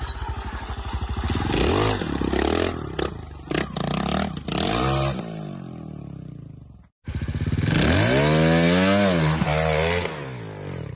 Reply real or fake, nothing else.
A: real